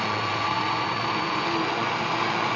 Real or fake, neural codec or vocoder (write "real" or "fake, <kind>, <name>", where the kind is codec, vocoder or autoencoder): fake, vocoder, Vocos